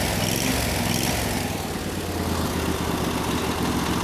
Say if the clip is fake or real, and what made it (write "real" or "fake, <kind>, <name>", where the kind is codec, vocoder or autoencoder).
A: real